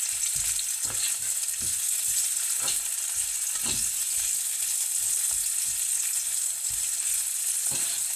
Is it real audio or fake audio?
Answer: real